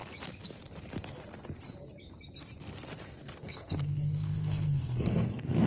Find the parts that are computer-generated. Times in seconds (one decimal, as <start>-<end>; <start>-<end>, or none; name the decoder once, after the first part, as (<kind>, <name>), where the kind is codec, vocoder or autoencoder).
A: 3.4-5.7 (codec, SNAC)